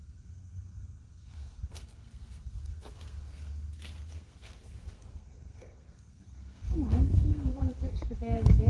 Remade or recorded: remade